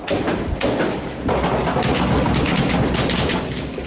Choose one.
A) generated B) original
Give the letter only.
B